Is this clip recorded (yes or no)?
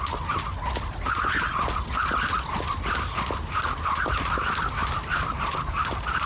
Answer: yes